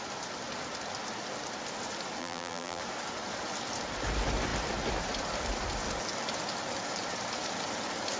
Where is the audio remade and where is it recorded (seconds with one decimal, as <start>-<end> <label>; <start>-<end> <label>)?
0.0-2.2 recorded; 2.2-2.8 remade; 2.8-8.2 recorded